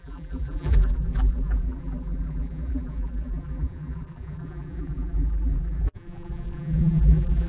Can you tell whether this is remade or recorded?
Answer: remade